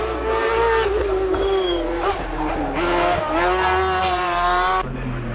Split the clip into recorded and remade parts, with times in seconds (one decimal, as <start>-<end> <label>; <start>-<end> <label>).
0.0-1.0 recorded; 1.0-2.5 remade; 2.5-4.0 recorded; 4.0-5.3 remade